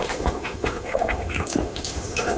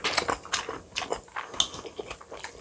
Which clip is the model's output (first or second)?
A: first